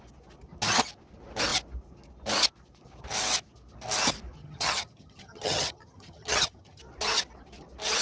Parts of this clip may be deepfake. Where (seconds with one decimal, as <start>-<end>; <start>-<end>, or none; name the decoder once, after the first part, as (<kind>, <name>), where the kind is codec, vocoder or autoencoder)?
4.4-6.8 (vocoder, HiFi-GAN)